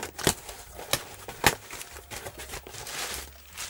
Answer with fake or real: real